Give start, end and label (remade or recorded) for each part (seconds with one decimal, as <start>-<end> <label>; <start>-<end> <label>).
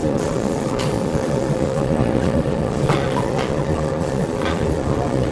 0.0-5.3 remade